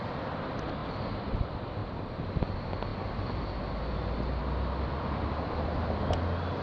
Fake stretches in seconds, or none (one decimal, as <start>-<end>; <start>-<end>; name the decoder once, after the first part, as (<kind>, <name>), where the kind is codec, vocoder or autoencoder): 1.8-2.3 (vocoder, BigVGAN v2)